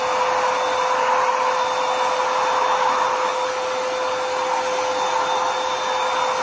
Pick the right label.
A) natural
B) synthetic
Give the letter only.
A